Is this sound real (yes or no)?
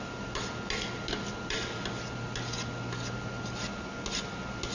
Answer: yes